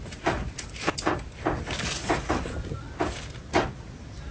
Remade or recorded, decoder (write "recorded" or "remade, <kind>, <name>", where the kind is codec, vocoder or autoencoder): recorded